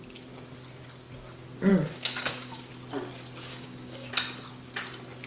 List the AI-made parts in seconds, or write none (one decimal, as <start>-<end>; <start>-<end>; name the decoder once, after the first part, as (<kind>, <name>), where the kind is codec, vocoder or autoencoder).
1.7-2.7 (codec, DAC); 3.5-4.1